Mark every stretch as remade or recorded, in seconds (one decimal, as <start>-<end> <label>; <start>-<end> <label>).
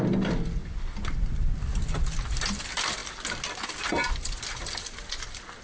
0.0-5.6 recorded